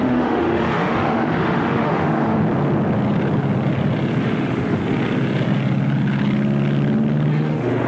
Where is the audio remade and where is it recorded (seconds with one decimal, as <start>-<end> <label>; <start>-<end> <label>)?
0.0-2.4 remade; 2.4-4.2 recorded; 4.2-4.8 remade; 4.8-7.3 recorded; 7.3-7.9 remade